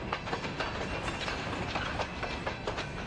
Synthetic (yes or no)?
no